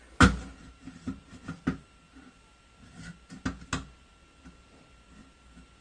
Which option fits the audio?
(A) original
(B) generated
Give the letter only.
A